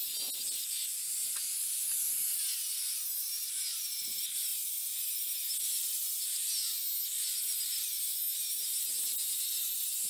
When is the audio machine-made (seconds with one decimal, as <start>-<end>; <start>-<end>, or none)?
none